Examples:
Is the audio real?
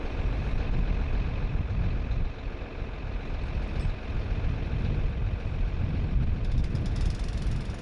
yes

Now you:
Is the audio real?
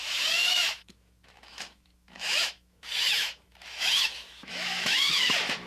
no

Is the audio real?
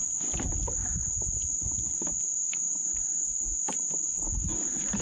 yes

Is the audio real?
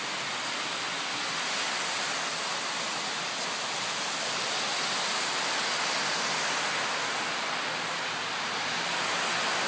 yes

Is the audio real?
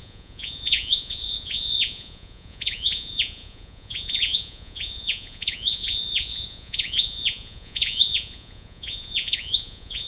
no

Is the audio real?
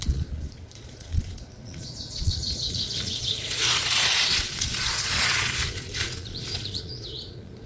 no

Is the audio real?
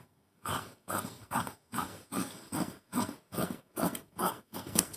no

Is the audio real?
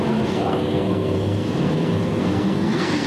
no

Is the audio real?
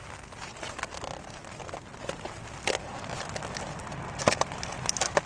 yes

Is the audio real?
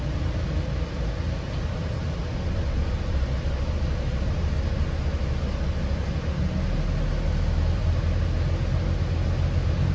yes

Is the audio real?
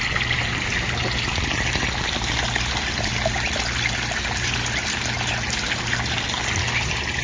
yes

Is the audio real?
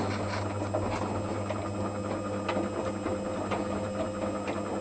yes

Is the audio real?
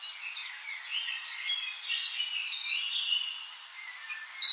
yes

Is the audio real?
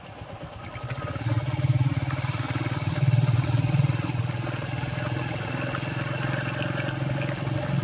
yes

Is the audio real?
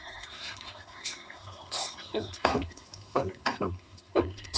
no